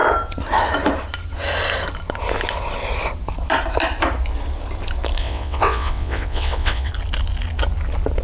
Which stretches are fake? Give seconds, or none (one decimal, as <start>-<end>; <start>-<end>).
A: 5.2-6.9